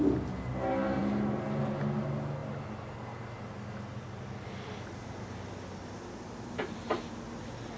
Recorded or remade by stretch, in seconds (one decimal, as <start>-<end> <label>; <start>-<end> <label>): 0.0-7.8 recorded